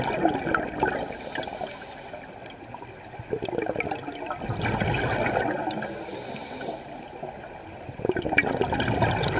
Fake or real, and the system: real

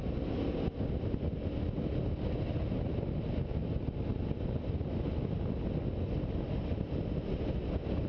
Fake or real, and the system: real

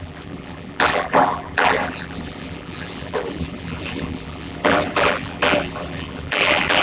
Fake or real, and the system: fake, vocoder, BigVGAN v2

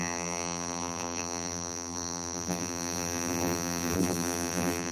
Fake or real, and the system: fake, vocoder, BigVGAN v2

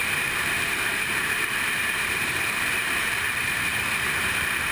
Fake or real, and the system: fake, vocoder, BigVGAN v2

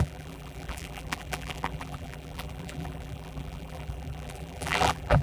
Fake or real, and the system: fake, vocoder, BigVGAN v2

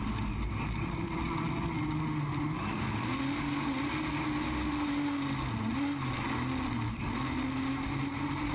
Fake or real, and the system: real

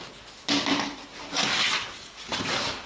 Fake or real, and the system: real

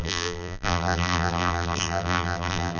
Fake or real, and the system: fake, vocoder, BigVGAN v2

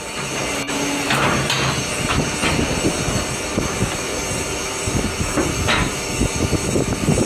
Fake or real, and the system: real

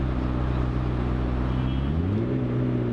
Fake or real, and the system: real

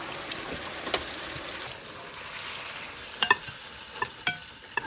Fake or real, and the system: real